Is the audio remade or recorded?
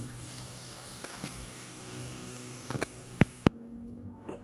remade